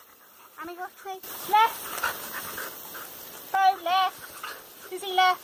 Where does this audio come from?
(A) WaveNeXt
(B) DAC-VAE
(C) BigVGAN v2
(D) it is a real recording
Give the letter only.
D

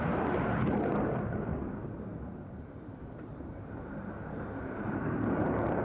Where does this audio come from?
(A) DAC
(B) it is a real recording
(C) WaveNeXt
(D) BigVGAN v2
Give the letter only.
D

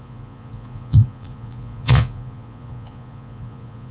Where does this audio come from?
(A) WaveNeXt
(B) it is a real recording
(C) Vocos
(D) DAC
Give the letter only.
C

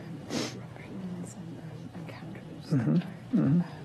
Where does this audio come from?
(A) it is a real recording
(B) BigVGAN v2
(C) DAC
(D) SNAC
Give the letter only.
B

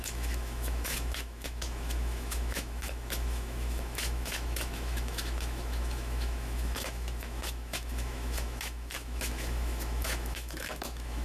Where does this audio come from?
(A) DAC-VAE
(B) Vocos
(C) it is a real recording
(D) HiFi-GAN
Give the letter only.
A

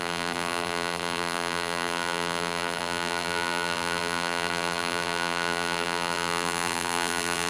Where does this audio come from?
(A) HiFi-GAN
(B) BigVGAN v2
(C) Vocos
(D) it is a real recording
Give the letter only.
B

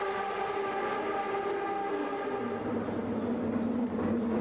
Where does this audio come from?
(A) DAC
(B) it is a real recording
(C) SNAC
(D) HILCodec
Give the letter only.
B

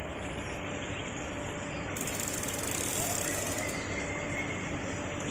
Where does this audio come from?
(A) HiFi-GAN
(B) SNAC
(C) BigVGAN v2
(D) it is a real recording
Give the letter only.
D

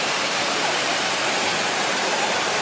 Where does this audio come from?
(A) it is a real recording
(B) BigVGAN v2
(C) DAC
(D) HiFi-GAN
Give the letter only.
B